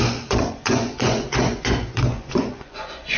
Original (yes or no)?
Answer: no